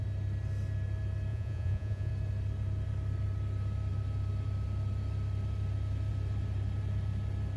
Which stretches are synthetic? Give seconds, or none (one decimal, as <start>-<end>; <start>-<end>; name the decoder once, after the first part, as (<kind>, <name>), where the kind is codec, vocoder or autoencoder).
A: 1.3-2.1 (vocoder, Vocos)